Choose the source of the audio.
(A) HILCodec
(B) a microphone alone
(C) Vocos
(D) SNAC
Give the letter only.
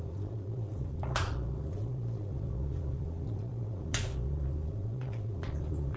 C